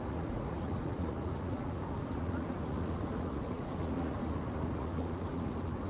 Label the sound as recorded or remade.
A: remade